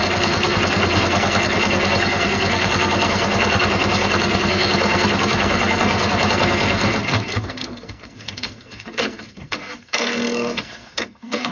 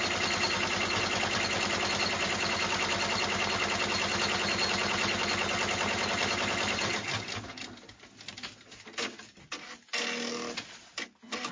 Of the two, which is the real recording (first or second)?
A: second